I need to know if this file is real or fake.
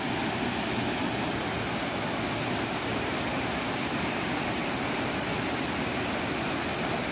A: real